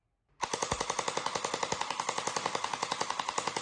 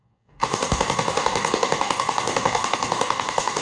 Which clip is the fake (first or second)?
second